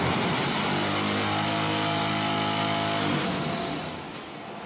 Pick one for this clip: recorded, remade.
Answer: recorded